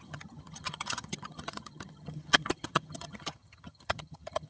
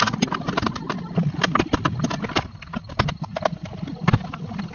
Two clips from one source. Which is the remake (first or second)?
first